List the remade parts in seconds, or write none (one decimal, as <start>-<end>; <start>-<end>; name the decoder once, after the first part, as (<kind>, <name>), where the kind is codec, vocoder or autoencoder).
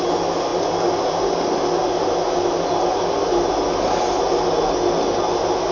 none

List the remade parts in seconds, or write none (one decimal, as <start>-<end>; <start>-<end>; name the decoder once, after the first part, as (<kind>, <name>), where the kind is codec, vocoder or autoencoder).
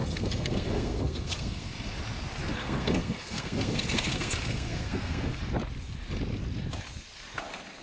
0.0-1.7 (codec, SNAC); 2.6-5.4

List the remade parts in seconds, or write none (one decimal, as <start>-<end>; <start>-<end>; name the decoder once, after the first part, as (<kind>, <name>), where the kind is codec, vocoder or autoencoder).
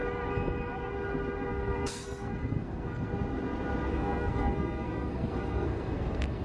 1.5-3.1 (codec, SNAC); 3.9-6.4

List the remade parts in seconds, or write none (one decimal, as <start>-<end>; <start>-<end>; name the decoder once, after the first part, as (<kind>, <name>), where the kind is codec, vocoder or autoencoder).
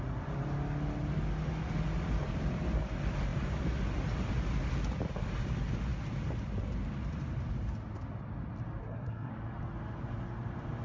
8.8-9.3 (codec, SNAC)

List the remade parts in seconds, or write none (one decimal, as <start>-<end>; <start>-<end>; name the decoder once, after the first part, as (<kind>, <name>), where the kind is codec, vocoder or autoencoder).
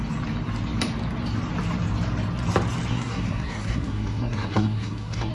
2.9-5.3 (codec, SNAC)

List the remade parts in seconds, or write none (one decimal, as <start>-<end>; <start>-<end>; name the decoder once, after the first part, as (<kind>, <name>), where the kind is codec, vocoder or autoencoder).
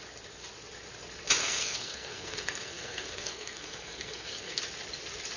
1.4-4.6 (codec, SNAC)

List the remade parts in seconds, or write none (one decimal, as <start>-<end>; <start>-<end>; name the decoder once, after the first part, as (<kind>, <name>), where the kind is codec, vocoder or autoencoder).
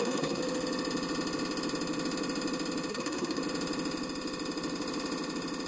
0.0-0.4 (codec, SNAC); 2.9-3.4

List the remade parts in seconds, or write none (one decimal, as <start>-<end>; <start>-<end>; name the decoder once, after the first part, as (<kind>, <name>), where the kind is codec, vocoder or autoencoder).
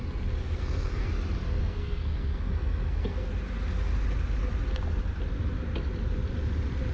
0.4-1.1 (codec, SNAC); 1.6-3.3